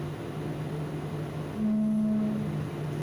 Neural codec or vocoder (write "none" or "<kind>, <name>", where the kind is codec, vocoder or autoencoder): none